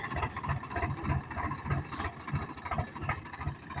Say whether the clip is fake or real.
real